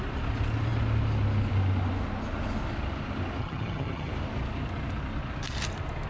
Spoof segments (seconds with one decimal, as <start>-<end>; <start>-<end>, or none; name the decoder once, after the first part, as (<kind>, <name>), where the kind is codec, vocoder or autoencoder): 3.4-4.1 (vocoder, HiFi-GAN)